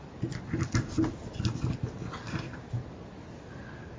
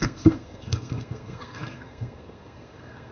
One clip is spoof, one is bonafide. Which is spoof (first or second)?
second